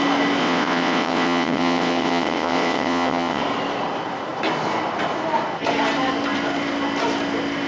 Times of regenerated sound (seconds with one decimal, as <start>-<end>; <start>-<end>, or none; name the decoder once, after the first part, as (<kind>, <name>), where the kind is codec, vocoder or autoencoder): 0.4-3.4 (vocoder, WaveNeXt)

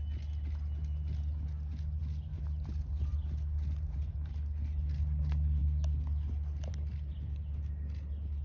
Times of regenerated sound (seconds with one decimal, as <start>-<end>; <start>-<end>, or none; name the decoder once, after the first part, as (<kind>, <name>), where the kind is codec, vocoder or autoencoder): none

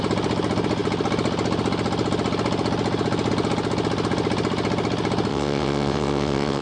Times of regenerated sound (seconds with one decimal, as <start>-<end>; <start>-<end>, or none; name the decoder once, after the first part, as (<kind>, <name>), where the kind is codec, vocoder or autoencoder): 5.3-6.6 (vocoder, WaveNeXt)